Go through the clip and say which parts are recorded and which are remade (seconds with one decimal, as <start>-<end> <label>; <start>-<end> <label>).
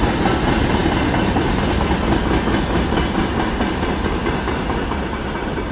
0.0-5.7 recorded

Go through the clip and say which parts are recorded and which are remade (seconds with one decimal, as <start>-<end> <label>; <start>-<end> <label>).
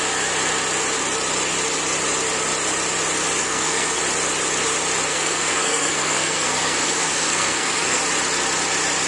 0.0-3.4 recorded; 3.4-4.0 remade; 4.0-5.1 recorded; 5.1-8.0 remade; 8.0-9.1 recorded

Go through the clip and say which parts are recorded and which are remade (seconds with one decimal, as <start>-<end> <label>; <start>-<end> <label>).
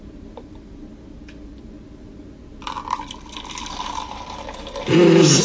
0.0-5.4 recorded